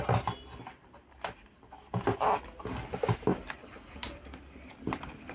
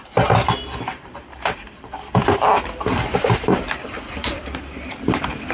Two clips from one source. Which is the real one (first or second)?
first